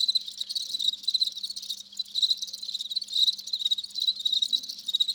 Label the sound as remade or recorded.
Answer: recorded